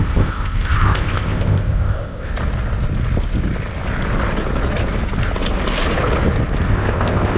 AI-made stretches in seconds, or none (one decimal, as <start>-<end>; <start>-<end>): 0.0-2.3; 6.7-7.4